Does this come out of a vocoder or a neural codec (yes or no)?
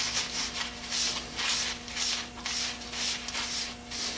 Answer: no